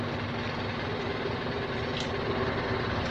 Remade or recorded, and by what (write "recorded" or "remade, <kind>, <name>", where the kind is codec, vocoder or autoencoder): recorded